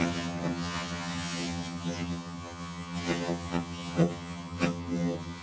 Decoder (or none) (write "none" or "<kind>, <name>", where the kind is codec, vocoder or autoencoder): vocoder, HiFi-GAN